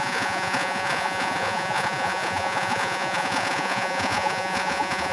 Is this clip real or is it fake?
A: fake